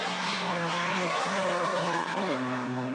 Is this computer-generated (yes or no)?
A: yes